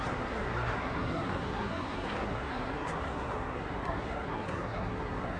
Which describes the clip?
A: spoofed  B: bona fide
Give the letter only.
A